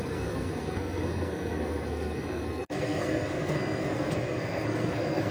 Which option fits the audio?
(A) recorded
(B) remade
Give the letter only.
B